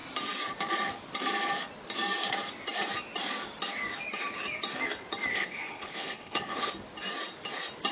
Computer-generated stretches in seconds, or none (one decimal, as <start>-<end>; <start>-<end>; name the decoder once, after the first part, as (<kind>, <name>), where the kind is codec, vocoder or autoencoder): 5.3-6.7 (codec, HILCodec)